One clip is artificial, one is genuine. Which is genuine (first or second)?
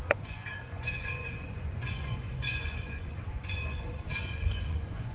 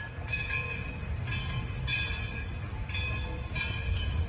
second